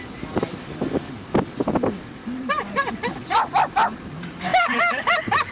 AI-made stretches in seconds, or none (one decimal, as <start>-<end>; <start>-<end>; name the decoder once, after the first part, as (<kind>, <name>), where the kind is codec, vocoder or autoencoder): none